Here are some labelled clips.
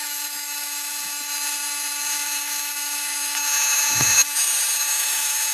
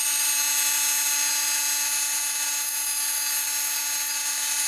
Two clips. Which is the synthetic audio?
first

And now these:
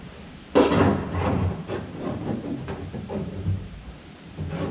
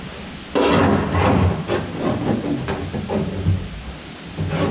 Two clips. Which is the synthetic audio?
first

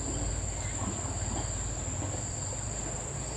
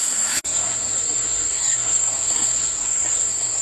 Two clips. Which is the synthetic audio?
second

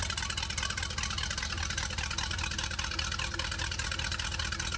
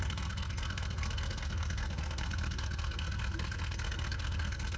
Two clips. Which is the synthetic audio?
second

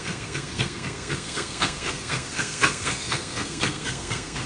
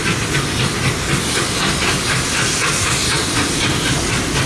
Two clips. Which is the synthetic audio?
first